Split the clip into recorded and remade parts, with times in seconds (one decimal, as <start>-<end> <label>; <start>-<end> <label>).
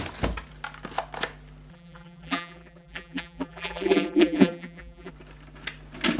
0.0-1.7 recorded; 1.7-5.1 remade; 5.1-6.2 recorded